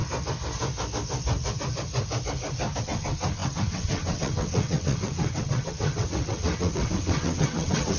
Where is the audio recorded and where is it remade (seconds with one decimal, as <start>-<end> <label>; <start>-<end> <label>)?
0.0-2.8 recorded; 2.8-8.0 remade